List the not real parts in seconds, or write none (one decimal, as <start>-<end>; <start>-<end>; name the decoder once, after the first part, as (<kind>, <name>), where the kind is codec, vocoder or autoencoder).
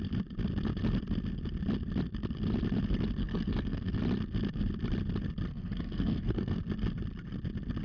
3.2-4.0 (codec, SNAC); 5.5-6.6